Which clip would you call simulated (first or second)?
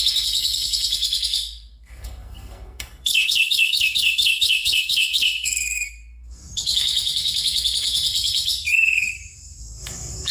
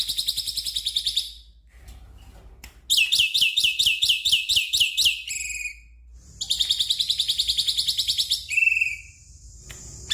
first